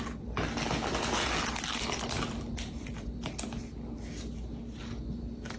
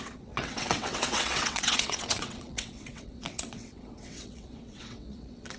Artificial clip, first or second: second